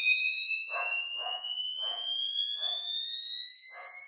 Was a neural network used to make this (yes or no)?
yes